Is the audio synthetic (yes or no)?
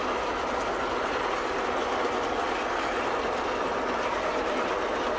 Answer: no